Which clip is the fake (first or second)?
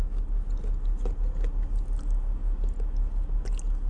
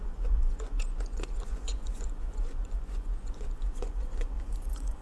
second